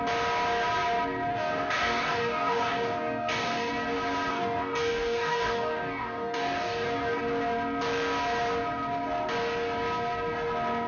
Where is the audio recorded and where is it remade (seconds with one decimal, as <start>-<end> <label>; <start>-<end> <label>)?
0.0-1.3 recorded; 1.3-3.7 remade; 3.7-4.3 recorded; 4.3-7.2 remade; 7.2-10.9 recorded